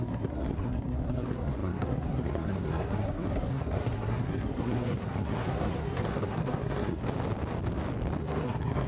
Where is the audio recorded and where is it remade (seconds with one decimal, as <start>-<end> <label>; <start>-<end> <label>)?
0.0-7.0 remade; 7.0-8.2 recorded; 8.2-8.9 remade